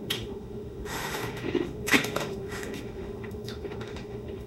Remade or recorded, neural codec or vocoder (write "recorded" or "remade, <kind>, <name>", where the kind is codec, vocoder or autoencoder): remade, autoencoder, DAC-VAE